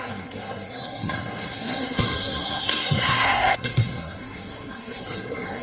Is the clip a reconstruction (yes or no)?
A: yes